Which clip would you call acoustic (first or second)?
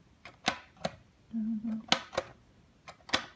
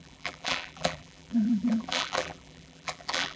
first